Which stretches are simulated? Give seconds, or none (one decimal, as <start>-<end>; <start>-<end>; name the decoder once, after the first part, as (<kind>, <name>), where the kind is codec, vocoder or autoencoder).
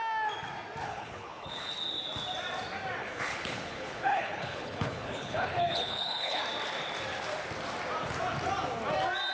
0.8-1.7 (codec, HILCodec); 3.0-6.4